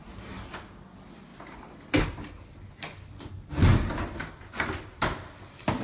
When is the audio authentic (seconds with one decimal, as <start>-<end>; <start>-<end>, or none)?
0.0-5.8